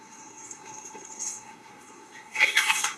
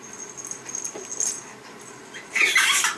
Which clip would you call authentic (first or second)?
second